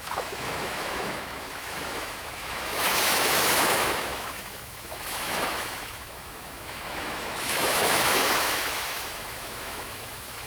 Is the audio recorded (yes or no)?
no